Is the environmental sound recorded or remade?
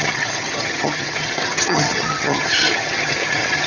remade